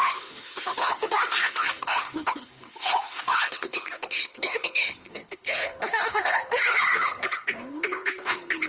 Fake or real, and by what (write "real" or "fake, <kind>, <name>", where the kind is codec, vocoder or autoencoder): fake, codec, HILCodec